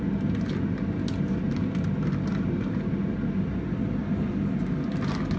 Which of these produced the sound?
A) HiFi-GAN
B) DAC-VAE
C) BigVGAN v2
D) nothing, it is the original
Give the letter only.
D